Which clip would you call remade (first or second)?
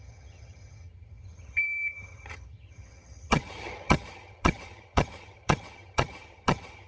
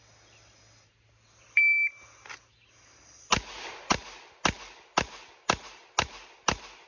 first